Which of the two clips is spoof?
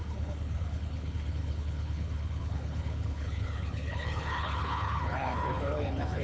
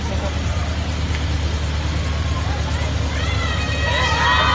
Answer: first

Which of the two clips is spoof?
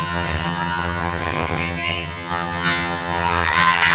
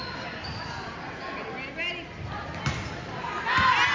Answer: first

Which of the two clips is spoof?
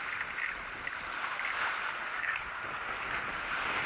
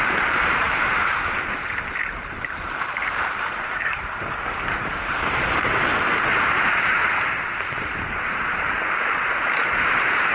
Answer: second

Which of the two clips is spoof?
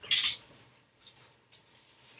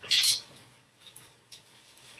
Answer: second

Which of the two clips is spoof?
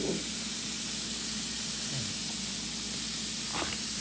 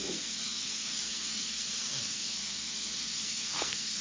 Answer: second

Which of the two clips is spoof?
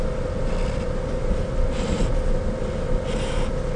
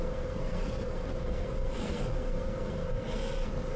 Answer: second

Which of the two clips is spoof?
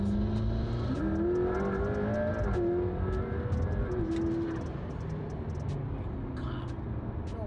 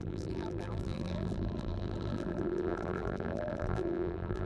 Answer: second